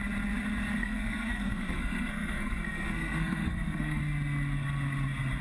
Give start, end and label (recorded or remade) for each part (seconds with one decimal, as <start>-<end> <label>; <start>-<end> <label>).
0.0-0.8 recorded; 0.8-4.0 remade; 4.0-5.4 recorded